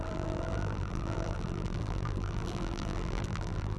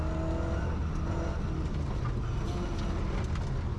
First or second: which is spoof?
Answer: first